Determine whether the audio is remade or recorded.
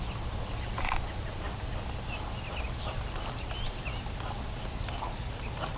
recorded